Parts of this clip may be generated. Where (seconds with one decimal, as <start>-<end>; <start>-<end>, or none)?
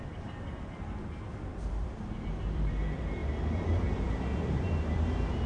0.0-5.5